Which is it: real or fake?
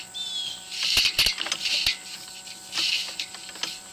real